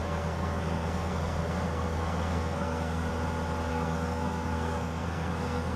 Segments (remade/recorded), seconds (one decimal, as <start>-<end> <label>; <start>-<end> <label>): 0.0-3.1 remade; 3.1-3.7 recorded; 3.7-5.8 remade